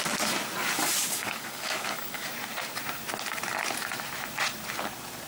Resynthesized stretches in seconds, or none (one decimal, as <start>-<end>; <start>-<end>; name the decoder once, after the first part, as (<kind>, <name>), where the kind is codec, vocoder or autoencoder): 1.0-2.3 (codec, DAC)

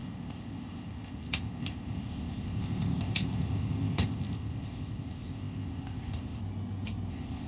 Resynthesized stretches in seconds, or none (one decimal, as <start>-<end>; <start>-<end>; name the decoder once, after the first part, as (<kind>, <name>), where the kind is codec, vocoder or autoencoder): 0.0-6.4 (codec, ZipCodec); 7.1-7.5

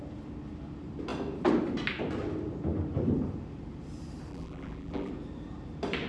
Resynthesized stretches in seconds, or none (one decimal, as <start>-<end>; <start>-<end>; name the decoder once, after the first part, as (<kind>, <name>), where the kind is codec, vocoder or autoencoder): 4.3-5.1 (vocoder, BigVGAN v2)

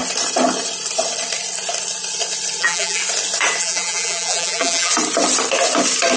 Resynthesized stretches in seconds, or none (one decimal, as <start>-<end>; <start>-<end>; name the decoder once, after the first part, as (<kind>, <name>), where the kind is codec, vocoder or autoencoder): 2.6-3.0 (vocoder, BigVGAN v2); 3.6-4.9